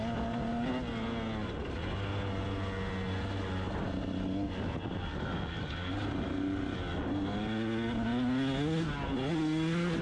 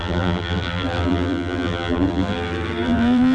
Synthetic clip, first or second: second